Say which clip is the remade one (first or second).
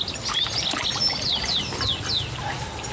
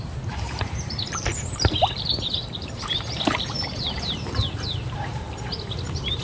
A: second